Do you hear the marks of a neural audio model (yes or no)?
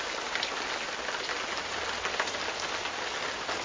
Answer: no